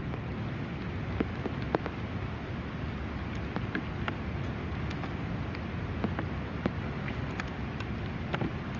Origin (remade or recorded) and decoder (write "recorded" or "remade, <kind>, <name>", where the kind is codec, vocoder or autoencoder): recorded